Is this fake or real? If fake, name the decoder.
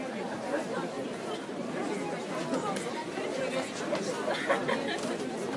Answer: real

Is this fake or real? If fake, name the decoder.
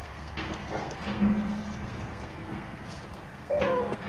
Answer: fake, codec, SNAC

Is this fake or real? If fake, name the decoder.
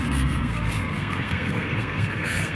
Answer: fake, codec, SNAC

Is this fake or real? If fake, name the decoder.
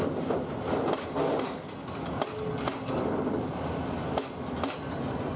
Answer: real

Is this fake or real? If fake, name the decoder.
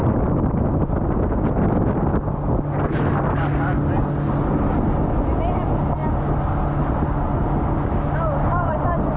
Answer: real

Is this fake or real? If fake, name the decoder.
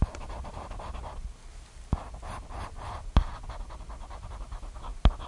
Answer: real